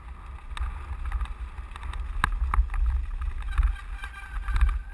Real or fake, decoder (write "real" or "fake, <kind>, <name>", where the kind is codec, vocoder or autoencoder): real